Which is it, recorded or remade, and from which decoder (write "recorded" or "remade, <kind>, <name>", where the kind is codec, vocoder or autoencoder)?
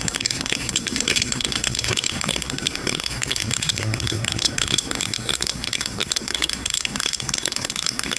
remade, codec, SNAC